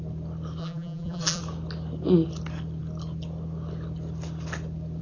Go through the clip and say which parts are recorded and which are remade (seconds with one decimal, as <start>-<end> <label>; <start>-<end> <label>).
0.0-0.6 recorded; 0.6-1.4 remade; 1.4-5.0 recorded